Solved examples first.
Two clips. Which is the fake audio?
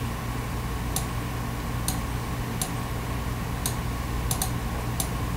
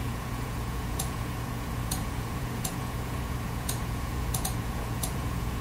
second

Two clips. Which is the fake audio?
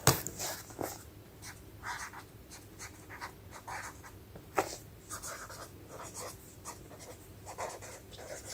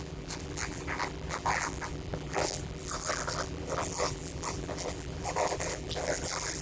second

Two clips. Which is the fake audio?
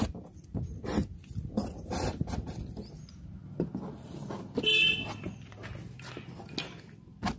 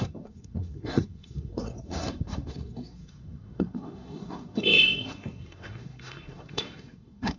second